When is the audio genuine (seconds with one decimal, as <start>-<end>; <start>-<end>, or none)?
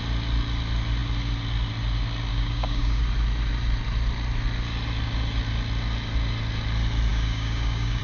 0.0-2.3; 3.0-7.1